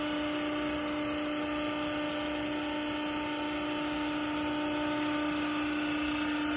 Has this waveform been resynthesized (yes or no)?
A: no